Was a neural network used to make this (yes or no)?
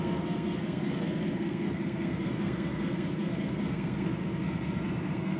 yes